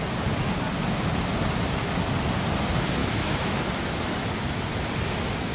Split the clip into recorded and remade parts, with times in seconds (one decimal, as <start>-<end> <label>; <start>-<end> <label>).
0.0-3.0 recorded; 3.0-3.6 remade; 3.6-5.5 recorded